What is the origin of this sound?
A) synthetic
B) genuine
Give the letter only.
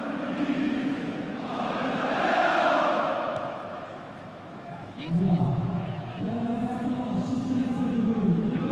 A